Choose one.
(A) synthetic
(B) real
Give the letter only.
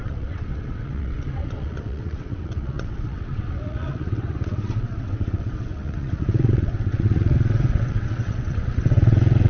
A